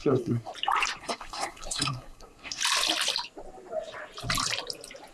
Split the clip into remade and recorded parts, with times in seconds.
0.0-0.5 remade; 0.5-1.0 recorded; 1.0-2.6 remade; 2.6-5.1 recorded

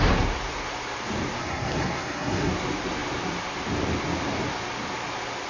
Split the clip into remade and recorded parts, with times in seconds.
0.0-1.4 recorded; 1.4-2.5 remade; 2.5-5.5 recorded

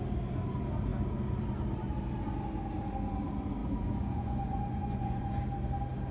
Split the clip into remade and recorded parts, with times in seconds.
0.0-3.6 recorded; 3.6-5.3 remade; 5.3-6.1 recorded

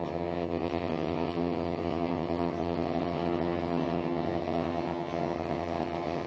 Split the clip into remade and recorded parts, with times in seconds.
0.0-6.3 remade

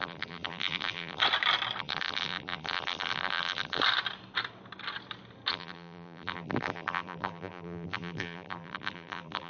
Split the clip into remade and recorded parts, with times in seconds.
0.0-1.2 remade; 1.2-1.8 recorded; 1.8-3.8 remade; 3.8-5.5 recorded; 5.5-9.5 remade

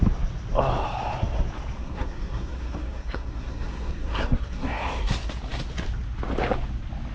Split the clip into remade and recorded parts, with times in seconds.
0.0-1.8 recorded; 1.8-5.1 remade; 5.1-7.1 recorded

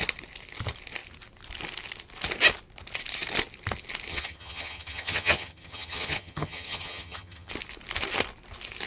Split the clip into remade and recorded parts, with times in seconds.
0.0-4.1 recorded; 4.1-7.5 remade; 7.5-8.9 recorded